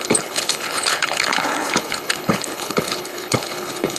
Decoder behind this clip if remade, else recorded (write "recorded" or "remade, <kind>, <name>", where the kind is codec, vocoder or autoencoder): remade, codec, HILCodec